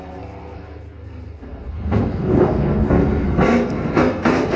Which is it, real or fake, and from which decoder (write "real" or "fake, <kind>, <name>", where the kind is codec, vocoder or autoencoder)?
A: fake, codec, SNAC